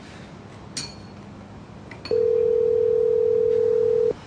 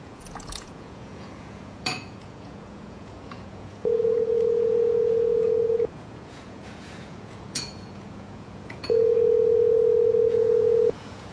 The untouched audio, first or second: first